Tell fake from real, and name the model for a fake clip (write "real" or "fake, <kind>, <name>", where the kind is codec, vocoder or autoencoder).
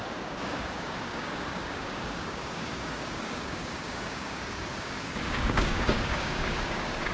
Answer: fake, codec, DAC